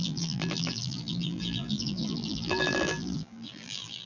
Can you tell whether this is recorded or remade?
remade